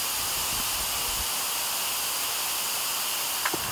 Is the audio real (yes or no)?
yes